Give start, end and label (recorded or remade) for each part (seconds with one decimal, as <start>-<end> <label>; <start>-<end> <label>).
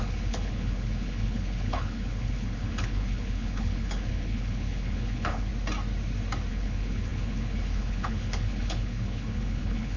0.0-5.5 remade; 5.5-6.5 recorded; 6.5-10.0 remade